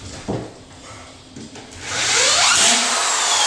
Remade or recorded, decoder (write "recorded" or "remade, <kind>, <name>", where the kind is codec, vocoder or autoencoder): recorded